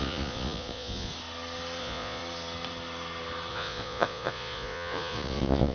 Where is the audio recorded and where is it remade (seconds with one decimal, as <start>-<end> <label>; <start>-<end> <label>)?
0.0-1.1 remade; 1.1-1.8 recorded; 1.8-2.2 remade; 2.2-3.5 recorded; 3.5-5.7 remade